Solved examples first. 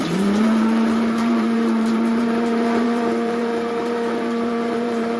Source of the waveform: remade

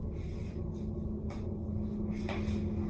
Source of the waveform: recorded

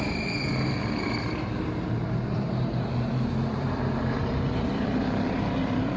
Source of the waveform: remade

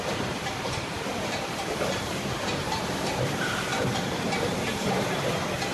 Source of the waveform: remade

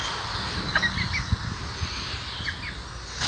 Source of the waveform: recorded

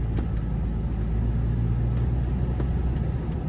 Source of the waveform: recorded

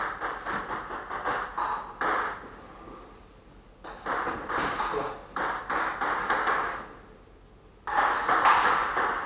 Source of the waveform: recorded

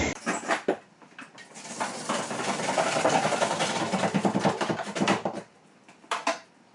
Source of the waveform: remade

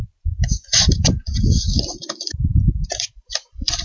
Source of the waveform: remade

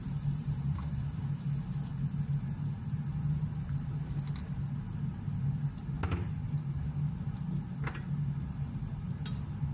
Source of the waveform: recorded